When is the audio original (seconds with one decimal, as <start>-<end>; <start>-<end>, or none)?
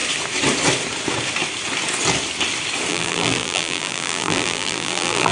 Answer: 0.0-2.9